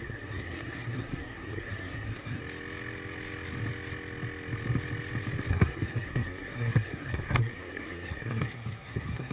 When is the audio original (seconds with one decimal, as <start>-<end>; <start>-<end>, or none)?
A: 2.4-5.5